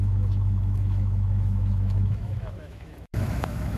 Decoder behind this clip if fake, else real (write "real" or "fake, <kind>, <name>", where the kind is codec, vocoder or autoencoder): fake, autoencoder, DAC-VAE